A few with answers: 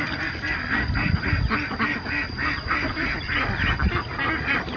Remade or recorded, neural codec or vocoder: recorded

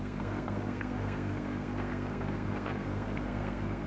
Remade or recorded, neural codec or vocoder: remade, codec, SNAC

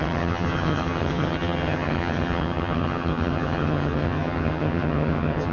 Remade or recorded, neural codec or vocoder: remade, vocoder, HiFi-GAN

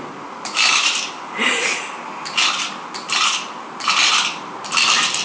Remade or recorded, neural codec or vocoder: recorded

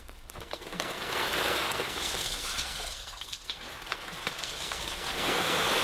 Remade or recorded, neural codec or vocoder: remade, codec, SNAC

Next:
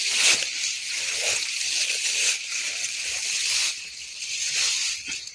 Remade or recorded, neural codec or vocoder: recorded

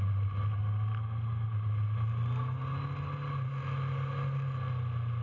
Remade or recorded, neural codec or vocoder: recorded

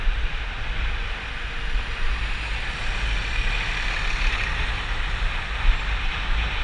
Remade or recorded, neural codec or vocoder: recorded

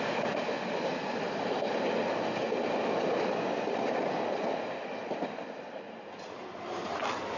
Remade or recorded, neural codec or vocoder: recorded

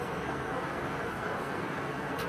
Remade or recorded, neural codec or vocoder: remade, codec, SNAC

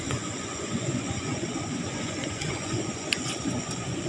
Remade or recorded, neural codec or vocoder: remade, vocoder, Vocos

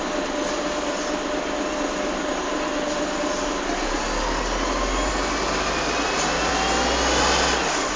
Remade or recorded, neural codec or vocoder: recorded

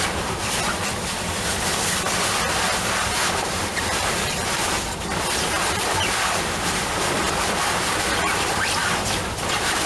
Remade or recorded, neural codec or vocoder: remade, vocoder, BigVGAN v2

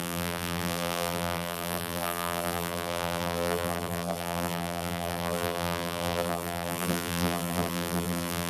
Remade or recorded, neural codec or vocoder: remade, vocoder, BigVGAN v2